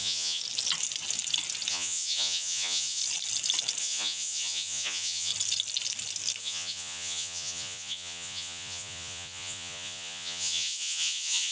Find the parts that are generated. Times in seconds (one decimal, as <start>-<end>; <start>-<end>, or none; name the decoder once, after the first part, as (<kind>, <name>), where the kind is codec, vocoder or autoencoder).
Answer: 0.0-0.4 (vocoder, Vocos); 1.7-3.0; 3.8-5.3; 6.4-11.5